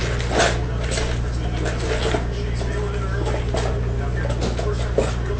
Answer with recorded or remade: recorded